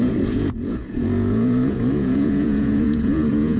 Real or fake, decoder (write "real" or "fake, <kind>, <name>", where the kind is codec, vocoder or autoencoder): fake, vocoder, Vocos